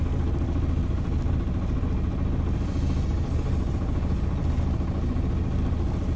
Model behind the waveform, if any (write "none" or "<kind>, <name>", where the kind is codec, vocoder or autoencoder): none